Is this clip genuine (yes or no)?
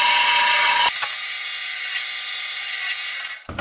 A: yes